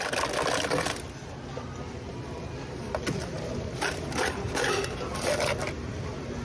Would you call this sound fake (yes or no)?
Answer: no